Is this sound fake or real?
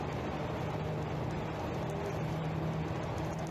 real